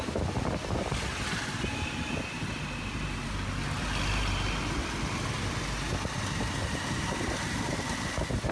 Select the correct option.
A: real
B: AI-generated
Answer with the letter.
A